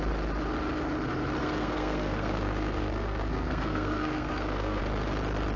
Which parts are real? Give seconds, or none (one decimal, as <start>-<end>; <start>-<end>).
0.0-1.4; 4.8-5.6